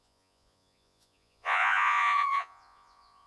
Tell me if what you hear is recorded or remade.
remade